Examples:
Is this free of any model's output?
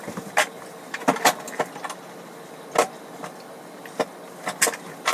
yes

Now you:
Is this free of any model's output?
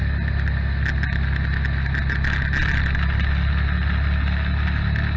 yes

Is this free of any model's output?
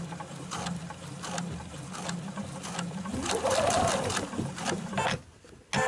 yes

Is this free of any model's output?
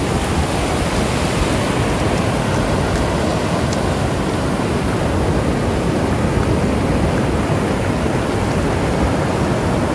yes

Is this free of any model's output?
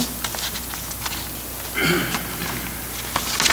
yes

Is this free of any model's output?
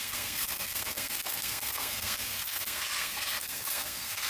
no